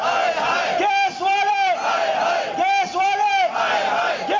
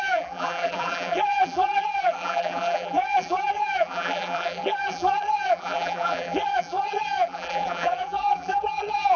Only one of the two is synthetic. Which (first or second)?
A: second